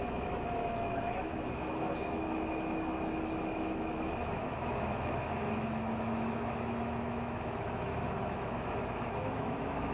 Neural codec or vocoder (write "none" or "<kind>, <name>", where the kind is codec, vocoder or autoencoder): autoencoder, DAC-VAE